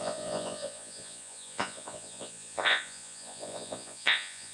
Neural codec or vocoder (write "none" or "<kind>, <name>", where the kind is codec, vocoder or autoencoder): vocoder, Vocos